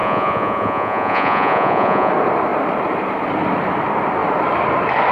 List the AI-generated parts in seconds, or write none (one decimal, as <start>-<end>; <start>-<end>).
0.0-2.1